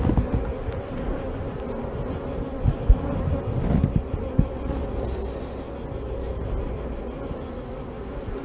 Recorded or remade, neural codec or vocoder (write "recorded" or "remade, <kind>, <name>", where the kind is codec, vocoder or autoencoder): recorded